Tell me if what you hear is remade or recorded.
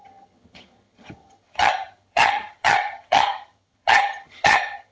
remade